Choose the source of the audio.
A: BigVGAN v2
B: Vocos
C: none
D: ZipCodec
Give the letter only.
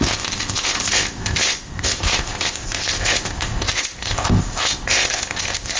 D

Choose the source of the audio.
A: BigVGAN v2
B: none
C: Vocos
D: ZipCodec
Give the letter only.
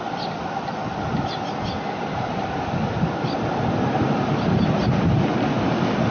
B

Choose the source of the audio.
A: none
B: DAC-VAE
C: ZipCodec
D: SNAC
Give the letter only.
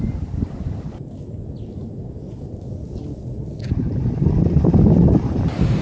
A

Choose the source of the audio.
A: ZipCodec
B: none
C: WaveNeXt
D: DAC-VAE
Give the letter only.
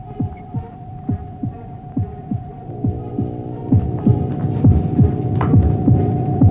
B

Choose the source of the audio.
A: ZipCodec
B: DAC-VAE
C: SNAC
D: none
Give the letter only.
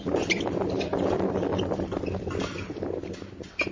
D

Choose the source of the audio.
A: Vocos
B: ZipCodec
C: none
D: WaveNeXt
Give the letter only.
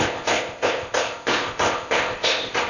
B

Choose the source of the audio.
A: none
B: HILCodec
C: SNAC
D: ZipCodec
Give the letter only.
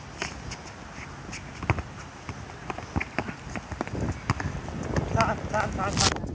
A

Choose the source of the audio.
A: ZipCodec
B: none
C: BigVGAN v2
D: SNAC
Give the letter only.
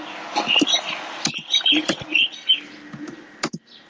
B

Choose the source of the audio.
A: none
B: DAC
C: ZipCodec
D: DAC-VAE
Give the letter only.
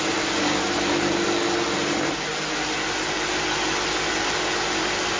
A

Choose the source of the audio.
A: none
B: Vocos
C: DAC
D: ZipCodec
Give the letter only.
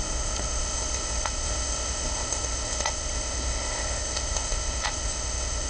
D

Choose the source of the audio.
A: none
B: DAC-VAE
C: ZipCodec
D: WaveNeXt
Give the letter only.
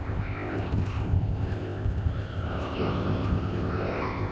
C